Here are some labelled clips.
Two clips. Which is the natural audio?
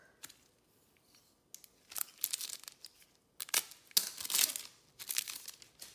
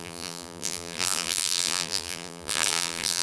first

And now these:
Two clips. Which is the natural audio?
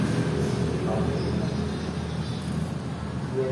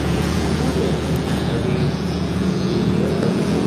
first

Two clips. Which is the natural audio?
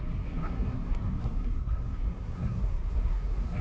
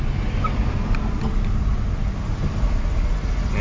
second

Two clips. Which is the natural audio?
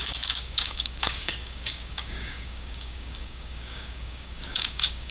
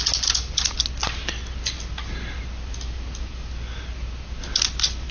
second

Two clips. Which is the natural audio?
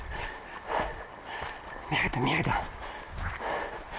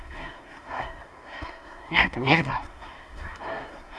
first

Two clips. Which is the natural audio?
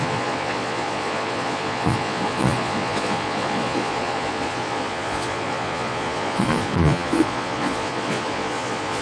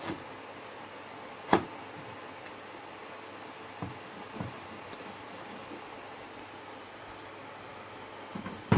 second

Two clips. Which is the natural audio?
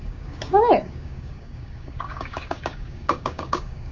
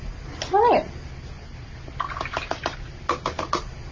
second